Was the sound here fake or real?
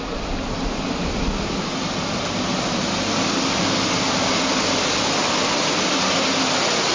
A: real